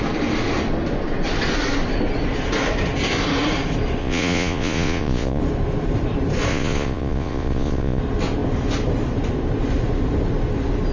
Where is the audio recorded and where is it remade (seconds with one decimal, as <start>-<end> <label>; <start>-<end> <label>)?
0.0-4.0 recorded; 4.0-5.4 remade; 5.4-6.5 recorded; 6.5-8.0 remade; 8.0-10.9 recorded